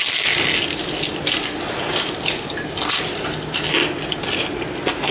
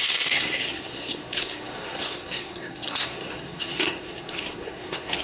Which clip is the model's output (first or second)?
second